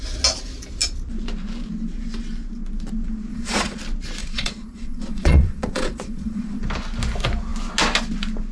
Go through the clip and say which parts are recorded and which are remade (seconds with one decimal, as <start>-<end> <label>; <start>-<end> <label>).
0.0-3.3 recorded; 3.3-3.8 remade; 3.8-4.2 recorded; 4.2-6.6 remade; 6.6-8.5 recorded